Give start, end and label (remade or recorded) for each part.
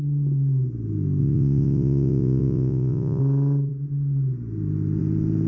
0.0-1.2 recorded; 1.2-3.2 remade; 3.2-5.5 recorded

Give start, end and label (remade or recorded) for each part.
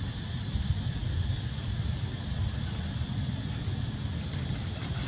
0.0-5.1 recorded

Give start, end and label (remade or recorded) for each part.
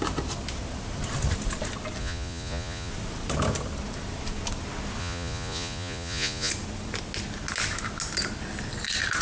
0.0-2.0 recorded; 2.0-2.9 remade; 2.9-5.0 recorded; 5.0-6.5 remade; 6.5-9.2 recorded